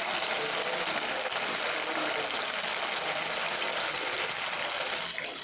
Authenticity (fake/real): real